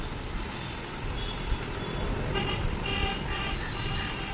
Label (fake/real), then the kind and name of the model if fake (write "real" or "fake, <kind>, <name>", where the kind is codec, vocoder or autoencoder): real